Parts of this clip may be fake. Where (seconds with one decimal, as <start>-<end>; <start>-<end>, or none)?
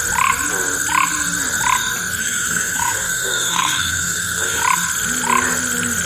2.2-4.6